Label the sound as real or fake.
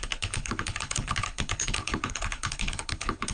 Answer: fake